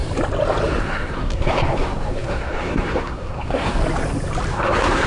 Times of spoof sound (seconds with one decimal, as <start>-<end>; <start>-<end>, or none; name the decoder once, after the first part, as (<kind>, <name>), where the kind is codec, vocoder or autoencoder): 0.8-3.8 (codec, SNAC); 4.5-5.1